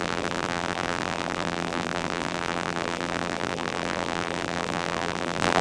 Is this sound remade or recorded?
remade